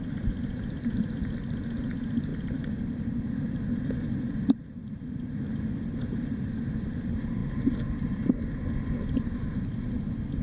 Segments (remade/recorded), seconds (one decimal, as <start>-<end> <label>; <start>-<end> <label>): 0.0-2.3 recorded; 2.3-5.7 remade; 5.7-10.4 recorded